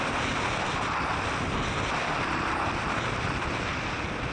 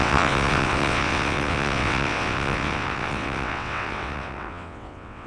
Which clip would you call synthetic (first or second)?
second